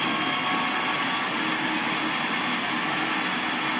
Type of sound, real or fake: real